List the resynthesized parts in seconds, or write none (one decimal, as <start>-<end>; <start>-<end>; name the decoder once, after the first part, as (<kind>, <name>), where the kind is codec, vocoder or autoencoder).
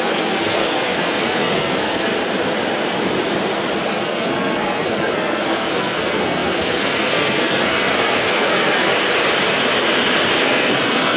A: 0.0-2.1 (codec, SNAC); 3.9-8.9; 10.4-11.2